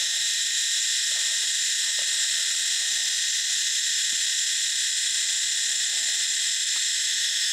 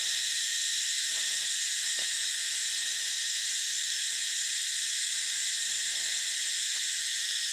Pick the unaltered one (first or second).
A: first